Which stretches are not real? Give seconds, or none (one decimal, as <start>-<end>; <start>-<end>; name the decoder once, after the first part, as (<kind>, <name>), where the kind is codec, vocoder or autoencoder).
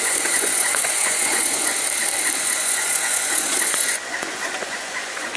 0.0-1.7 (vocoder, Vocos); 2.4-5.4